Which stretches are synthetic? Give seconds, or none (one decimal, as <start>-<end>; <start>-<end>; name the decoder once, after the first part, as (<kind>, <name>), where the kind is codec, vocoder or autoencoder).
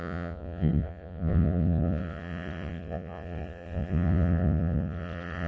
0.0-5.5 (vocoder, Vocos)